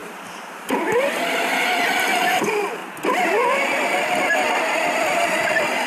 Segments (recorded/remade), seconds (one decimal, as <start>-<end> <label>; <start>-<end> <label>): 0.0-0.5 remade; 0.5-5.9 recorded